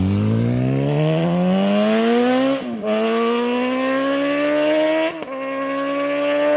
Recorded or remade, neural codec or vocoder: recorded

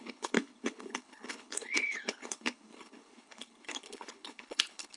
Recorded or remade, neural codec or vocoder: remade, codec, HILCodec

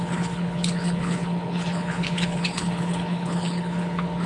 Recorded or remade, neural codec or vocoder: remade, codec, HILCodec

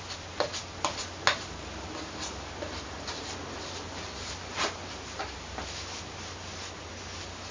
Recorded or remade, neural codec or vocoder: recorded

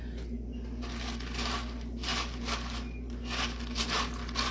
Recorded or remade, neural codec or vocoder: recorded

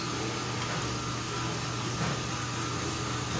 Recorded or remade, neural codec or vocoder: recorded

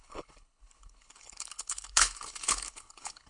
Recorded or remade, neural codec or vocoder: remade, codec, HILCodec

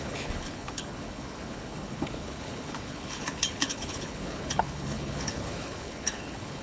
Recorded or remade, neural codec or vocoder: remade, codec, HILCodec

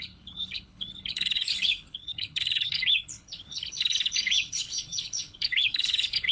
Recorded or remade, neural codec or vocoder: remade, codec, HILCodec